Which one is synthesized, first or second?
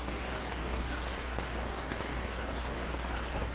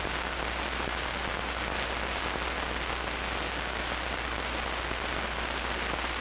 first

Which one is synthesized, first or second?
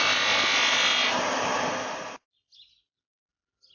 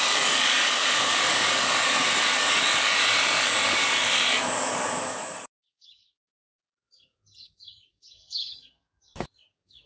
second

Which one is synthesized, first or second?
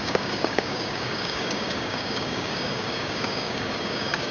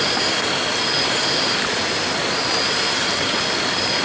first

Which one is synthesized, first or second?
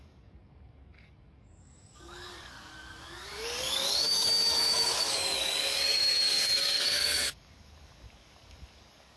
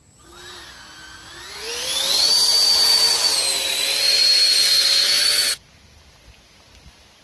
first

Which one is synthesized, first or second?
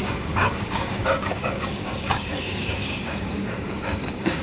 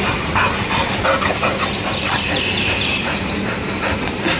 first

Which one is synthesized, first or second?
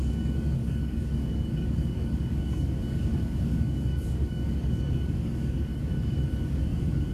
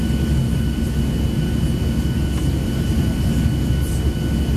first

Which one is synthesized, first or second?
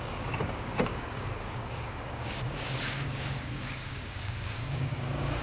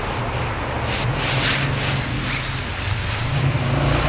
first